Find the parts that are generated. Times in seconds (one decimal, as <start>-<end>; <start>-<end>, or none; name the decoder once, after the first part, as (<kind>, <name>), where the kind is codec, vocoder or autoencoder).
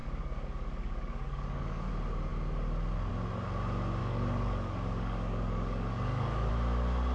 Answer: 0.0-1.9 (codec, DAC); 4.0-6.5